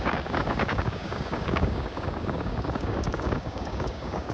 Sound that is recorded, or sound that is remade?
remade